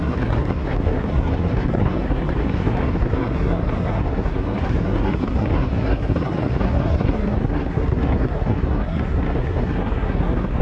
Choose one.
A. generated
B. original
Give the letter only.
A